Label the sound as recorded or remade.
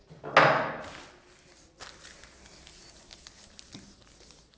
recorded